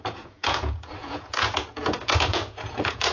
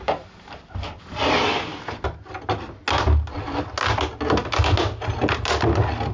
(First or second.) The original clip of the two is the second